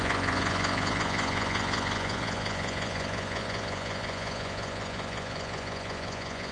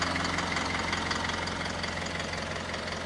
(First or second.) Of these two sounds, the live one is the second